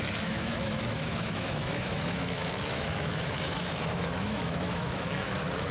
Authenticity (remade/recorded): remade